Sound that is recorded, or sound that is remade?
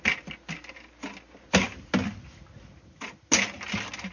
recorded